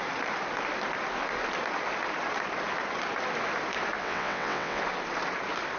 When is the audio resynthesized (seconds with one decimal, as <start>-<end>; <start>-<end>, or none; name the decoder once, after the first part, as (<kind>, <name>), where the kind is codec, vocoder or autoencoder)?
4.0-4.8 (vocoder, WaveNeXt)